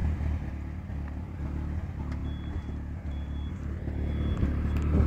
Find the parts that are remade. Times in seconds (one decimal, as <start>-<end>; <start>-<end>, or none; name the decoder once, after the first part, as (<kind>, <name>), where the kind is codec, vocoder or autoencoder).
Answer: 2.2-3.5 (vocoder, BigVGAN v2)